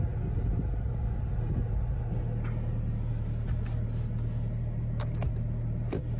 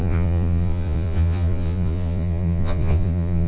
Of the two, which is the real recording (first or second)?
first